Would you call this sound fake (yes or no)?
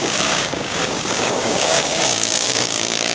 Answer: yes